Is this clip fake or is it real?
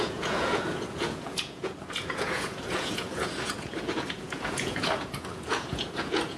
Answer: fake